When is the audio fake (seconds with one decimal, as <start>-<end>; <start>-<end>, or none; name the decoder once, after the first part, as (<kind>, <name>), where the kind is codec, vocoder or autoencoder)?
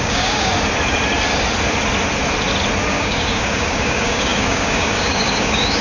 0.0-0.5 (codec, DAC); 2.9-5.8